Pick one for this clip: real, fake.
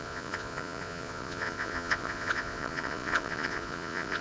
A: fake